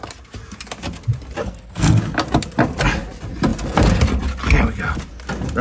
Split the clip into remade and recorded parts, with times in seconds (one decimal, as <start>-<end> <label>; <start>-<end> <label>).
0.0-1.4 recorded; 1.4-2.0 remade; 2.0-5.6 recorded